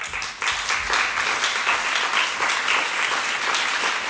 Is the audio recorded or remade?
recorded